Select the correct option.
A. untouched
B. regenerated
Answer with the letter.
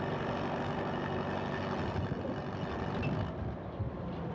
A